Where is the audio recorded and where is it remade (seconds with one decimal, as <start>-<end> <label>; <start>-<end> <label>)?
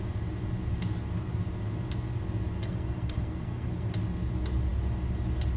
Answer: 0.0-2.6 recorded; 2.6-3.9 remade; 3.9-5.6 recorded